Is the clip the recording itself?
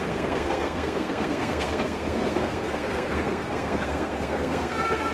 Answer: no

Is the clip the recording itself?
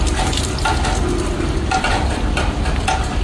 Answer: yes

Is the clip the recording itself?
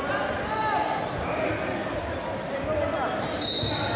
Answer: yes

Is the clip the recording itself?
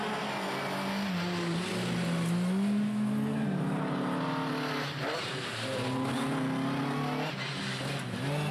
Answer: yes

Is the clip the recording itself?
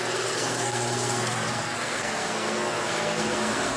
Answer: no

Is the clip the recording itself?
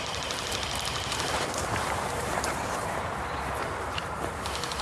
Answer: no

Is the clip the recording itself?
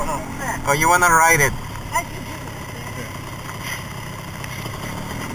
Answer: yes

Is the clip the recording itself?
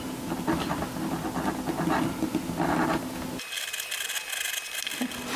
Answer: yes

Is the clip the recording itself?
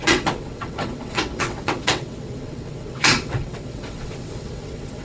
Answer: no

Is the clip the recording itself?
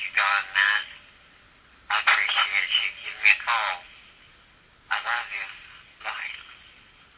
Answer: yes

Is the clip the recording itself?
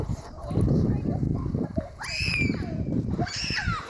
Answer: no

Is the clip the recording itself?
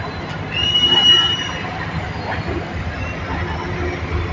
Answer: yes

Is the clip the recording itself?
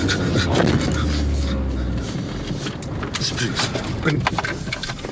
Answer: yes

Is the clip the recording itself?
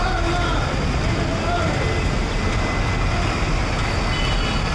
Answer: yes